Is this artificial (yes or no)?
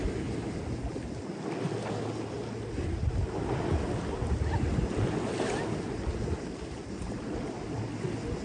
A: no